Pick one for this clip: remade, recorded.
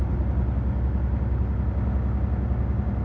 recorded